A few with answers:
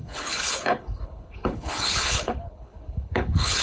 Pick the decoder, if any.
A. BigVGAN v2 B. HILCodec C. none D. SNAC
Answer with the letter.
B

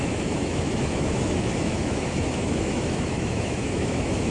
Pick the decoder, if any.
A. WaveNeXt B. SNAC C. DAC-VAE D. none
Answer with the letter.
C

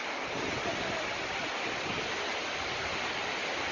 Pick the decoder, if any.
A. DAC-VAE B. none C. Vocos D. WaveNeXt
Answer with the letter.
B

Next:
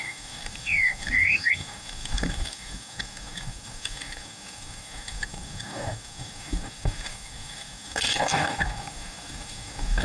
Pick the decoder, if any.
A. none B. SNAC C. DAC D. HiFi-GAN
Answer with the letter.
C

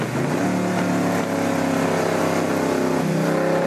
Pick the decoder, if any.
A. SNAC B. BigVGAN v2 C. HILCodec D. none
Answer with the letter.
D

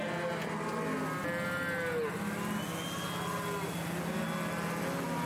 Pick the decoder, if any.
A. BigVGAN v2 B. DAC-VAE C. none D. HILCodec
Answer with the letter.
C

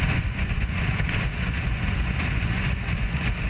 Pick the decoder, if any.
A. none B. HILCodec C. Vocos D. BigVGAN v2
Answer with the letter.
C